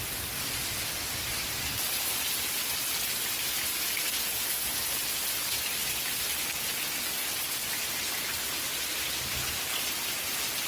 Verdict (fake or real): real